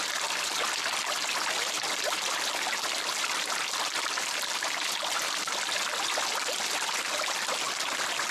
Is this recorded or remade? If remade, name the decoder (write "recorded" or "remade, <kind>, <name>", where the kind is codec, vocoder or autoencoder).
recorded